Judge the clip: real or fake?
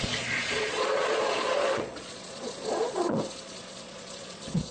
fake